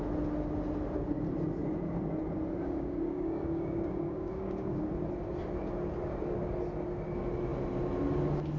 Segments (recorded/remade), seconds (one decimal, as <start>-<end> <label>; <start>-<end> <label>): 0.0-2.6 recorded; 2.6-4.8 remade; 4.8-8.6 recorded